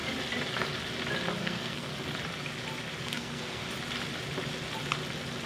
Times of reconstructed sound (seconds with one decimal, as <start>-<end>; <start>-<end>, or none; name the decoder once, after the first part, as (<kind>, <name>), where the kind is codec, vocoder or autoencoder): 1.4-1.9 (codec, SNAC); 3.0-3.6